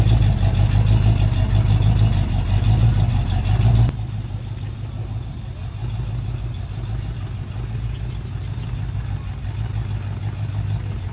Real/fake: real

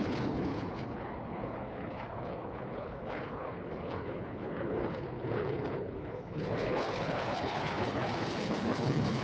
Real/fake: fake